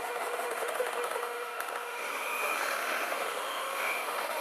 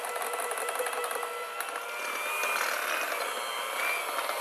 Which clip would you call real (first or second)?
second